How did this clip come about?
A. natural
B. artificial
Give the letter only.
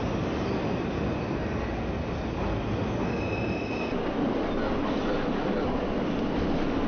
A